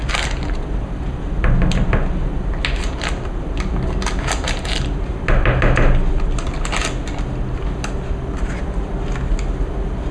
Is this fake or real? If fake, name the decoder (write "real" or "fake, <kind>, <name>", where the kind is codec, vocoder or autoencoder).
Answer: real